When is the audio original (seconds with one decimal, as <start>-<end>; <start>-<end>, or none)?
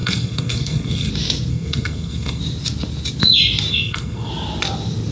1.1-1.5; 2.4-3.7; 4.3-5.1